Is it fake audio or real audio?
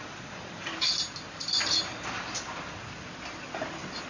real